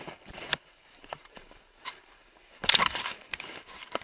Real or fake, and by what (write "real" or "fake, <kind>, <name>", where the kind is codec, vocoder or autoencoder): fake, vocoder, BigVGAN v2